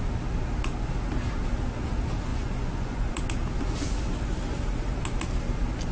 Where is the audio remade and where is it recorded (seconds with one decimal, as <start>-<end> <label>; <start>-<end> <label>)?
0.0-2.3 recorded; 2.3-3.1 remade; 3.1-5.9 recorded